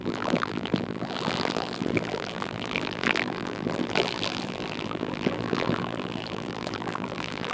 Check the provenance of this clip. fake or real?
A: fake